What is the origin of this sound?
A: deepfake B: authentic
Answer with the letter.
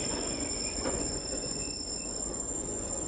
A